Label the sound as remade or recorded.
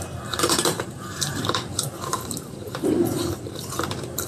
remade